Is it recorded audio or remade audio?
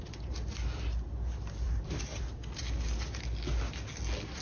recorded